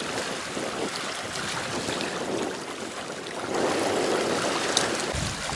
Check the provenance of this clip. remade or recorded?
recorded